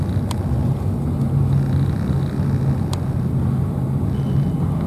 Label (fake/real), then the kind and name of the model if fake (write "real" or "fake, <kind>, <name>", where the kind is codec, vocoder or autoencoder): real